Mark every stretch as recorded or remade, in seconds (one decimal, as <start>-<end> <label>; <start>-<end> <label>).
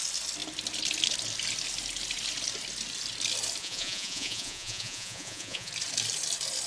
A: 0.0-3.6 recorded; 3.6-5.7 remade; 5.7-6.7 recorded